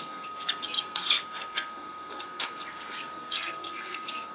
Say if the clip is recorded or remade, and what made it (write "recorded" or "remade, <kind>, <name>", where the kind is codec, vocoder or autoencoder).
remade, codec, SNAC